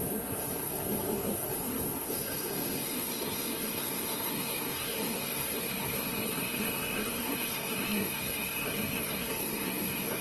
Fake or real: fake